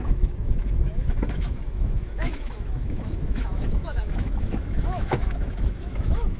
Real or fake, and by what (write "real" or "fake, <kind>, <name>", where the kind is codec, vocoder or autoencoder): fake, autoencoder, DAC-VAE